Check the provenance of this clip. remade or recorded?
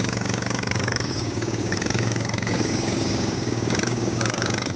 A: remade